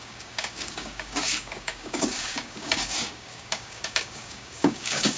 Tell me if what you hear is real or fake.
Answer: fake